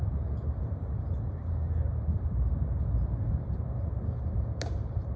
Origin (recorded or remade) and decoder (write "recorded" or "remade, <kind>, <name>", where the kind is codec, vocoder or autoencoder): remade, vocoder, BigVGAN v2